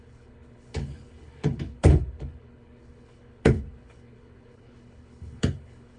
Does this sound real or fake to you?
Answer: fake